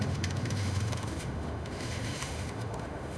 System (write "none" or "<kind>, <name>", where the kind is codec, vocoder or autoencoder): autoencoder, DAC-VAE